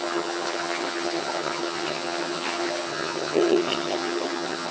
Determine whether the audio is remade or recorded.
remade